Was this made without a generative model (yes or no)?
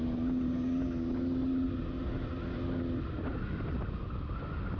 yes